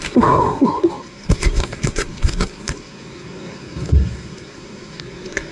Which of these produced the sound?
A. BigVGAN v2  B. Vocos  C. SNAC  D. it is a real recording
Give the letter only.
C